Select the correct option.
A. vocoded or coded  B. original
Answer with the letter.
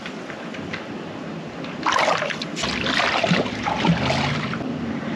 B